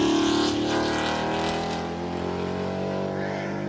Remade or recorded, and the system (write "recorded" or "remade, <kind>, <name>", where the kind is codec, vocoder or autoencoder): recorded